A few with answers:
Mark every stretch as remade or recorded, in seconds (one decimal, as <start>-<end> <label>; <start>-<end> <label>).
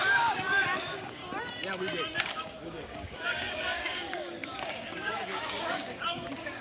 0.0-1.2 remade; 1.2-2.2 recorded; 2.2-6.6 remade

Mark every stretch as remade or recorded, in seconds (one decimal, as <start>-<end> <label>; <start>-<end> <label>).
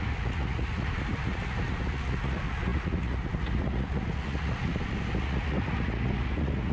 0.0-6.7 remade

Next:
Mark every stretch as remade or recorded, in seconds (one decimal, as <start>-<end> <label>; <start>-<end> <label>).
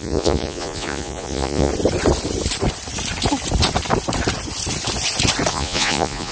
0.0-1.7 remade; 1.7-5.5 recorded; 5.5-6.3 remade